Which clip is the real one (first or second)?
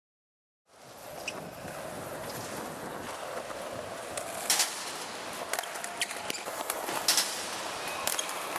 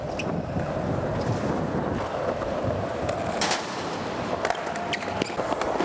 first